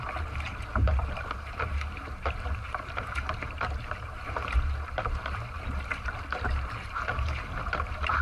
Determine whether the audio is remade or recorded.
remade